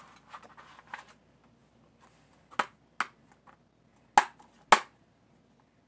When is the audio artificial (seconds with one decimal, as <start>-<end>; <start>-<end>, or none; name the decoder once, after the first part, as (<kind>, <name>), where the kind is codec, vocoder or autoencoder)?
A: none